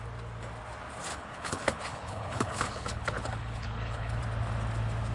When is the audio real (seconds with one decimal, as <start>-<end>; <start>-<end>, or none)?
0.0-1.1; 4.2-5.1